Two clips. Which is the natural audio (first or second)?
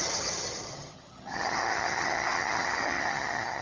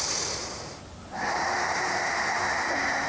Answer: second